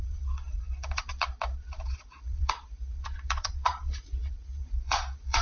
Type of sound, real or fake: fake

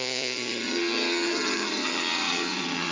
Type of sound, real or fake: fake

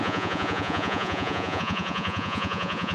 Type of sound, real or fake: fake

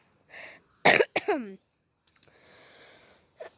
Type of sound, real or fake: real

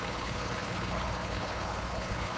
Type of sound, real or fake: fake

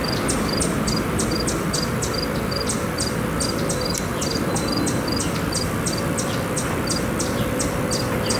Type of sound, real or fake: real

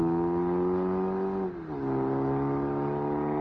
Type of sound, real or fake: real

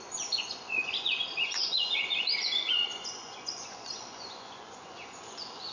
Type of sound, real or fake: fake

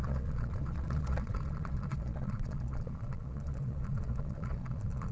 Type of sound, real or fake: fake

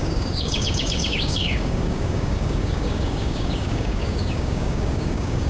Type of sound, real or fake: fake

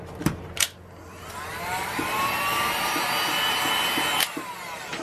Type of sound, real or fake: real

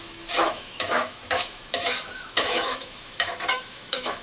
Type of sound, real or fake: fake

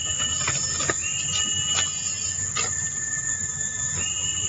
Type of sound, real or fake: real